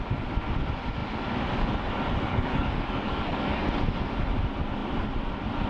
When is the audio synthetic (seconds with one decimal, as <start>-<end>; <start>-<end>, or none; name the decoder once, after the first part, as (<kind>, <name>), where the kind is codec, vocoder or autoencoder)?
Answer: 2.3-3.7 (codec, DAC)